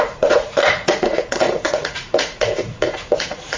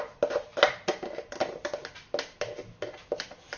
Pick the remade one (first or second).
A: first